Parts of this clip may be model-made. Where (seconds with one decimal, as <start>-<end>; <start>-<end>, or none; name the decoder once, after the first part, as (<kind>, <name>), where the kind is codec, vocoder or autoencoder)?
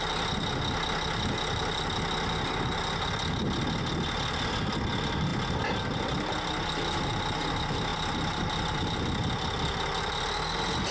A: none